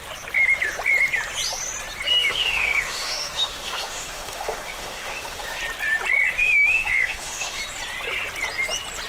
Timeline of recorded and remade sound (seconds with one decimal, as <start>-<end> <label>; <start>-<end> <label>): 0.0-2.1 recorded; 2.1-5.6 remade; 5.6-6.4 recorded; 6.4-7.6 remade; 7.6-9.1 recorded